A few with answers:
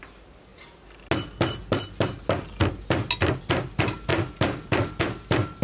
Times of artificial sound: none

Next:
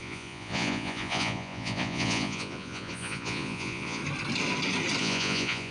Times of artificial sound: 0.0-4.0 (vocoder, Vocos); 5.0-5.7